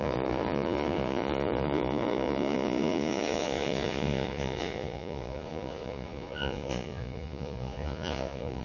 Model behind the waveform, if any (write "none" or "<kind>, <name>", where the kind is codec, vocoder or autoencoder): vocoder, Vocos